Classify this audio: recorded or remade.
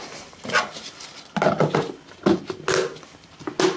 recorded